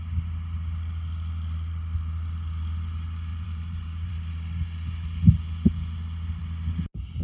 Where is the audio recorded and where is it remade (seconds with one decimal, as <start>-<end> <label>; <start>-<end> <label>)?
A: 0.0-3.3 recorded; 3.3-4.1 remade; 4.1-7.2 recorded